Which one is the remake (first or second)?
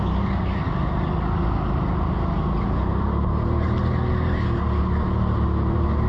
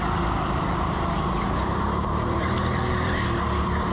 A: second